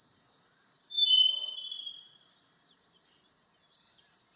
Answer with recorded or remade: remade